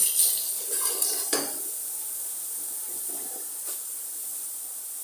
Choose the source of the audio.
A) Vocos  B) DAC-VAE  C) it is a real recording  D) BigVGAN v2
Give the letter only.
C